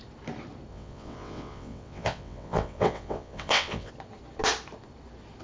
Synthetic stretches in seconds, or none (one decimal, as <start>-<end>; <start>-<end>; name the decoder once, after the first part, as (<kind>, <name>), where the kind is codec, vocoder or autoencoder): 0.7-3.9 (vocoder, WaveNeXt)